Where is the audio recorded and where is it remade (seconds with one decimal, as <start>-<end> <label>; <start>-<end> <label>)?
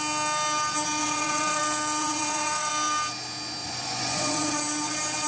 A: 0.0-1.0 recorded; 1.0-1.6 remade; 1.6-2.0 recorded; 2.0-2.7 remade; 2.7-3.6 recorded; 3.6-4.6 remade; 4.6-5.3 recorded